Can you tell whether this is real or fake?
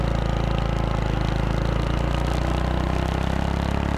real